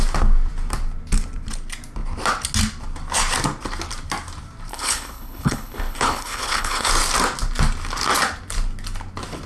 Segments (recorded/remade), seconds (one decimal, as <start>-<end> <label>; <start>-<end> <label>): 0.0-4.7 recorded; 4.7-6.9 remade; 6.9-9.5 recorded